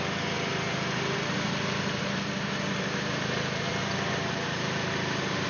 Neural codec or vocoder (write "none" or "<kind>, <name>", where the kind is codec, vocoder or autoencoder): vocoder, BigVGAN v2